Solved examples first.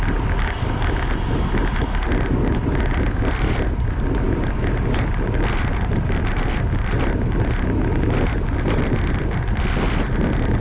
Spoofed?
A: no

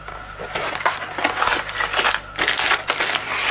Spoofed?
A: no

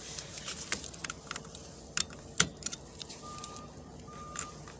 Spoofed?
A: yes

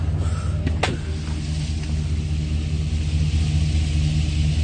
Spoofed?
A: no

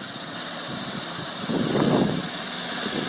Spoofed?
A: yes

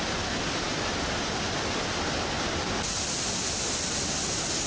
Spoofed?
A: no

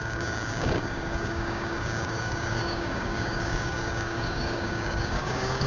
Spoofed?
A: yes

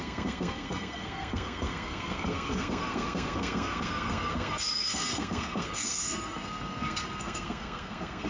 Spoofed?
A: yes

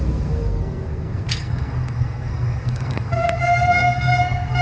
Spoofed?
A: yes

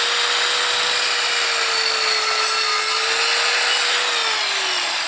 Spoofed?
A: no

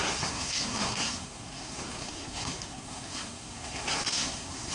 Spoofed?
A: yes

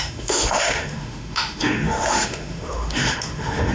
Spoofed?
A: yes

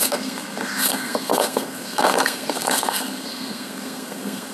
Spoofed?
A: yes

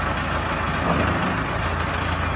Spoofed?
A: no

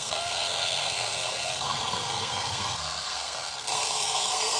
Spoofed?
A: yes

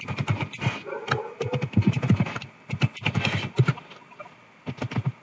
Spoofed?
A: no